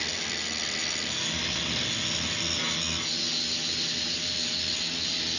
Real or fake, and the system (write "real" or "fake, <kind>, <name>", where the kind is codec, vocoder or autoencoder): real